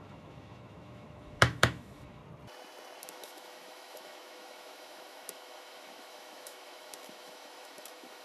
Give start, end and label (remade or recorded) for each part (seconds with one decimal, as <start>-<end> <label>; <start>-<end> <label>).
0.0-2.2 remade; 2.2-3.0 recorded; 3.0-8.2 remade